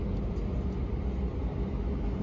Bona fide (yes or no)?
yes